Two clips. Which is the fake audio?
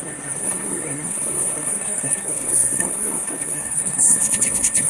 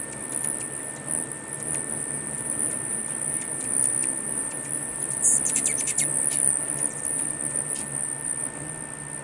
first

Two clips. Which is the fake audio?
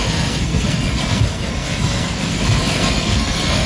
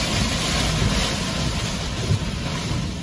first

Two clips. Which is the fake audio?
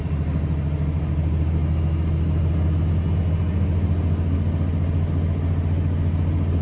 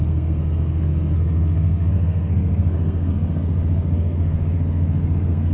second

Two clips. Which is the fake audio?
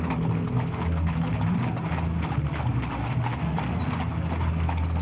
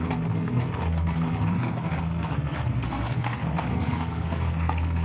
second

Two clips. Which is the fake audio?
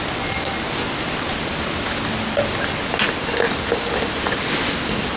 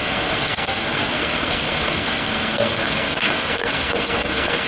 second